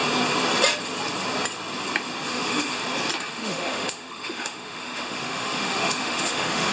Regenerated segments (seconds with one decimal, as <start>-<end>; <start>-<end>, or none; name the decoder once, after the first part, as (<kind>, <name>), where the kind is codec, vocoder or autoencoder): 2.3-2.8 (autoencoder, DAC-VAE); 3.3-6.7